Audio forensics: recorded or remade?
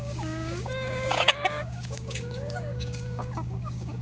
remade